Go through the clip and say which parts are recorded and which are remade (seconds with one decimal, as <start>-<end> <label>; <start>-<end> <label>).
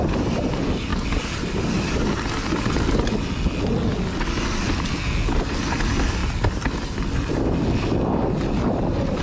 0.0-9.2 recorded